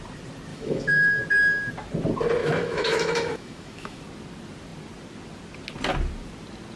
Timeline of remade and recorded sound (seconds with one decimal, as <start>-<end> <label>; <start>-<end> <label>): 0.0-0.5 recorded; 0.5-1.2 remade; 1.2-2.4 recorded; 2.4-4.0 remade; 4.0-6.8 recorded